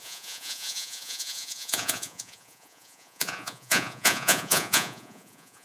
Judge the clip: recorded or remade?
remade